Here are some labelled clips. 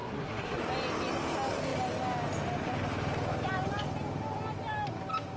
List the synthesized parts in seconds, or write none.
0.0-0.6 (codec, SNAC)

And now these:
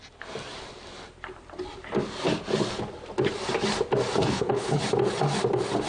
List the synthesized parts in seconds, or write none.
4.2-4.8 (codec, HILCodec)